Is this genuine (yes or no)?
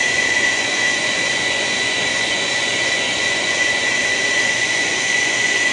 no